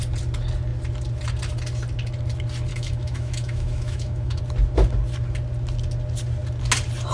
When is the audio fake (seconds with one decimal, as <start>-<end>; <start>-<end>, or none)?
2.7-4.4